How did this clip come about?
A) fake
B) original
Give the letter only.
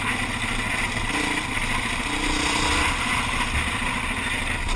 B